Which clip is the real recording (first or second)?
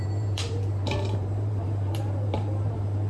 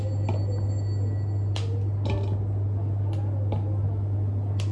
second